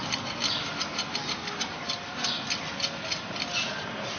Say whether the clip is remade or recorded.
recorded